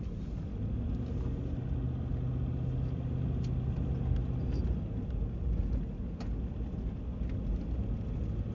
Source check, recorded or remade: recorded